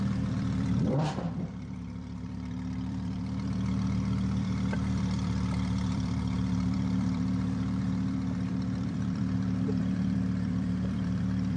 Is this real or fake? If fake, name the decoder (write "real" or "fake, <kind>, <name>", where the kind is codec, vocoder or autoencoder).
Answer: fake, vocoder, BigVGAN v2